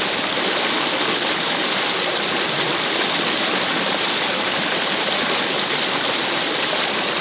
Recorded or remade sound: recorded